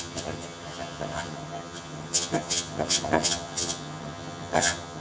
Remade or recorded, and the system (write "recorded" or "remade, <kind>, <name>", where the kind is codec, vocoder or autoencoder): remade, vocoder, HiFi-GAN